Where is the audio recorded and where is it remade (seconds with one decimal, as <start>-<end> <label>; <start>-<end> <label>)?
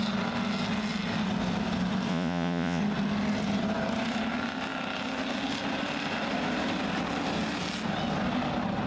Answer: 0.0-2.1 recorded; 2.1-2.8 remade; 2.8-8.9 recorded